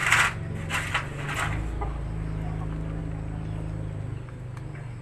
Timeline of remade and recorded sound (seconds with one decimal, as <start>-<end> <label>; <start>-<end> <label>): 0.0-5.0 recorded